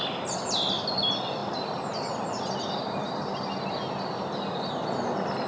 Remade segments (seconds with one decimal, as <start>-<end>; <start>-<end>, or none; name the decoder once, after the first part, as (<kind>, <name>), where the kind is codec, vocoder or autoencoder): none